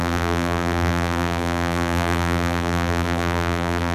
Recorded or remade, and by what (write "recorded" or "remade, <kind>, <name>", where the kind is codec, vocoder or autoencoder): remade, vocoder, BigVGAN v2